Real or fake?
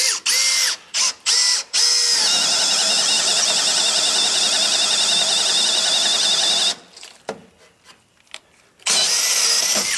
real